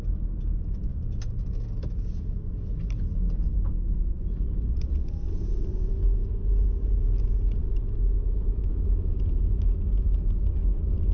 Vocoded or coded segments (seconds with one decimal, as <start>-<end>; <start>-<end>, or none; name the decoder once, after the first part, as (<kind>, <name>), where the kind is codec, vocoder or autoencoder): 7.6-9.1 (autoencoder, DAC-VAE)